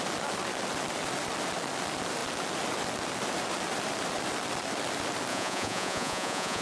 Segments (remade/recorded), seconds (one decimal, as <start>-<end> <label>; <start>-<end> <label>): 0.0-5.3 recorded; 5.3-6.6 remade